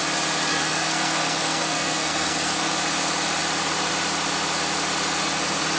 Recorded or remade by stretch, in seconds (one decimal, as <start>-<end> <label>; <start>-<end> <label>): 0.0-0.5 recorded; 0.5-2.7 remade; 2.7-5.8 recorded